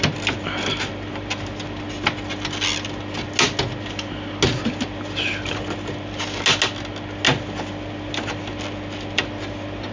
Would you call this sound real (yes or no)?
yes